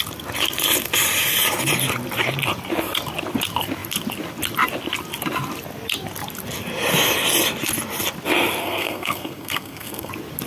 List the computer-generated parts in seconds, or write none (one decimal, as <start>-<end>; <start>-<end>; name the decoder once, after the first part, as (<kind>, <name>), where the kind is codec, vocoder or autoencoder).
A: 8.6-10.1 (codec, SNAC)